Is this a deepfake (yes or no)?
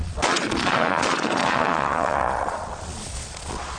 yes